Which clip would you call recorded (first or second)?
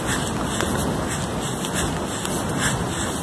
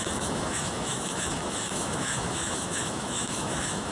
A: first